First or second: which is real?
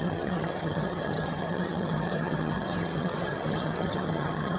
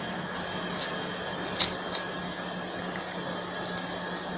second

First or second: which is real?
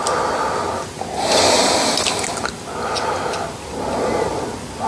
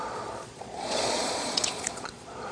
first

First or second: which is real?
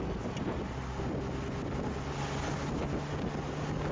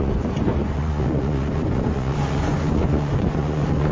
first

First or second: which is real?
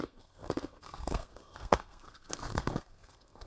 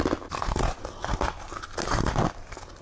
second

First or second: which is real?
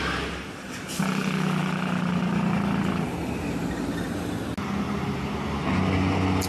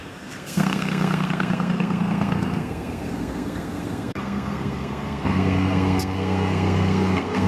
first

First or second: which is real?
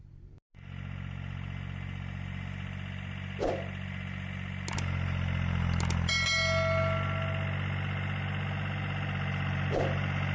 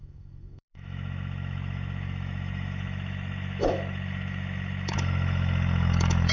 first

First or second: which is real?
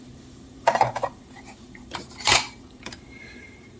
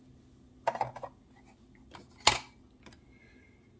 second